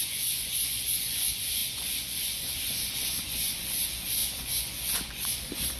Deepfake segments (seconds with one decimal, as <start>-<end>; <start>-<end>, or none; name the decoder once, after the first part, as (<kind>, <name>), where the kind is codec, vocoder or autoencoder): 0.0-5.8 (vocoder, Vocos)